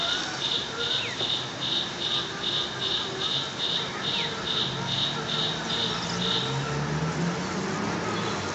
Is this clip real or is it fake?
real